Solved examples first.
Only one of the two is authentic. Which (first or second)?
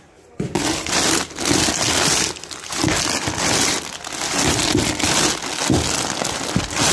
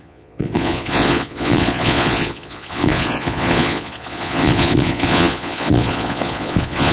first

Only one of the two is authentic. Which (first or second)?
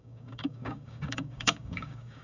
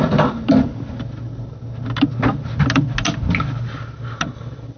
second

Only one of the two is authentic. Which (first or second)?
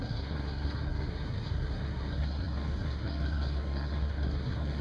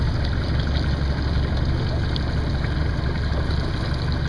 second